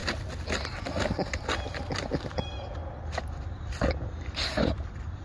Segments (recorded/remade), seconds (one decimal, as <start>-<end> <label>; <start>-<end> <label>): 0.0-3.1 recorded; 3.1-5.2 remade